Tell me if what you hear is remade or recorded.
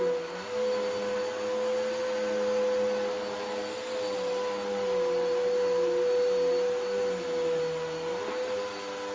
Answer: recorded